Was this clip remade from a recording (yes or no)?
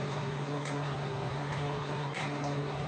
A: yes